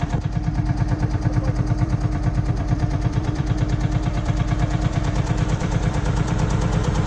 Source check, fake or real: fake